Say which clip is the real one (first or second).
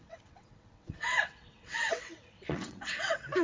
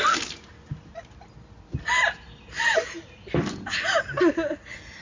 second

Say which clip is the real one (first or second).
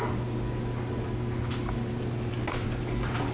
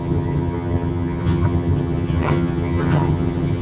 first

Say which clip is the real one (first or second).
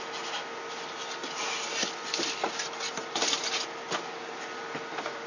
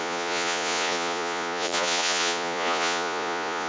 first